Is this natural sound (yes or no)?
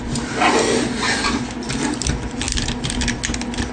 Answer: yes